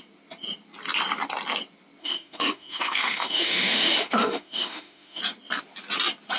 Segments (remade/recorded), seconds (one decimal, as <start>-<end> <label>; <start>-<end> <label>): 0.0-2.0 recorded; 2.0-5.2 remade; 5.2-6.4 recorded